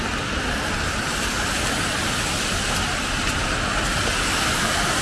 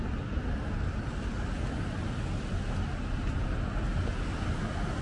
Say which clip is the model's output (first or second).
first